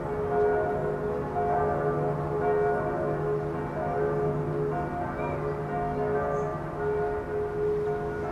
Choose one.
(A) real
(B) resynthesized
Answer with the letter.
A